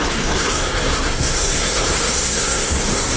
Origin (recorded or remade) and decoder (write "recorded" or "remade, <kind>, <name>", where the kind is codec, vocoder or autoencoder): remade, codec, SNAC